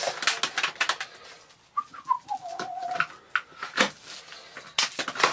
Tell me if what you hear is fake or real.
real